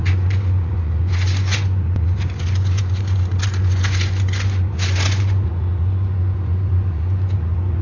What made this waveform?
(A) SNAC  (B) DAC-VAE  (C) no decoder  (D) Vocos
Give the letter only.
D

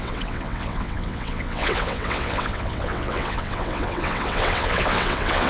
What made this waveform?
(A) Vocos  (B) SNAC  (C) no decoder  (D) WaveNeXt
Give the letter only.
D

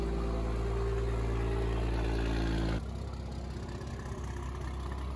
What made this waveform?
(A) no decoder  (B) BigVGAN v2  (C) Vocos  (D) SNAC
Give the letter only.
A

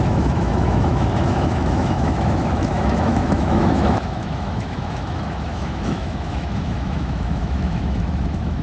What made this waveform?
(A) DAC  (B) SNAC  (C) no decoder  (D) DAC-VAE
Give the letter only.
D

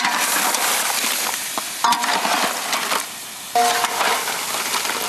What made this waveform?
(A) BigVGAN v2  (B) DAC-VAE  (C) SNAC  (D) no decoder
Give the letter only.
D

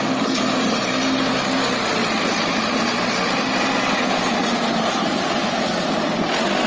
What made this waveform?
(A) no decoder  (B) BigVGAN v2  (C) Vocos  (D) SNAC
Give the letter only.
A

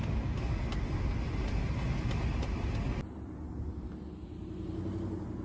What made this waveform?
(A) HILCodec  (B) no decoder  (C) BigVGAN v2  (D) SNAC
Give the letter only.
B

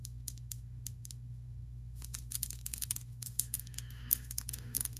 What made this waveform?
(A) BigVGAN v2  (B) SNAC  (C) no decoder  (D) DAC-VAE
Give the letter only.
D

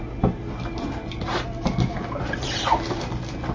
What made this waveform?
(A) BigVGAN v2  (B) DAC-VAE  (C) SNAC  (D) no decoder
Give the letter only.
D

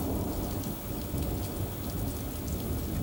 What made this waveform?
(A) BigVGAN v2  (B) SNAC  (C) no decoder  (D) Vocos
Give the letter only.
C